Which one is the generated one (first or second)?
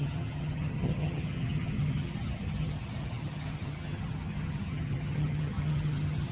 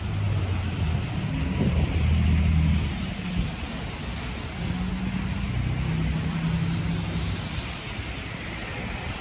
first